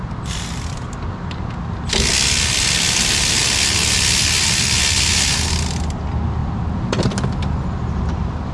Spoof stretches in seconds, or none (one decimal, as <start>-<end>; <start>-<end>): none